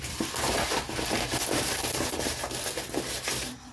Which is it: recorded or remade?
recorded